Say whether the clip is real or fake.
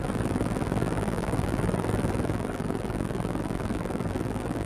fake